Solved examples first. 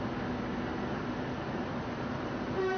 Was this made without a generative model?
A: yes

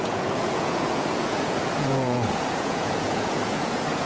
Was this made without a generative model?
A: no